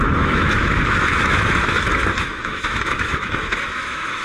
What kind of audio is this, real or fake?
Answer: fake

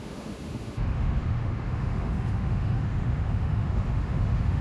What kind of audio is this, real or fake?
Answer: fake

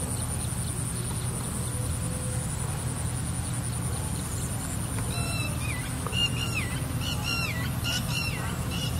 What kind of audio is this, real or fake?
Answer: real